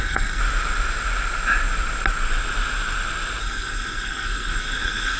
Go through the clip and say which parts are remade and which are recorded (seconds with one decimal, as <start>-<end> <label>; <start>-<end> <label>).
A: 0.0-0.4 remade; 0.4-3.4 recorded; 3.4-5.2 remade